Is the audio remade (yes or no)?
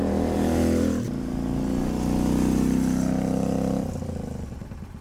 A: no